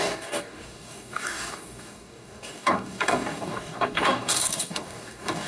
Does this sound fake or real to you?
fake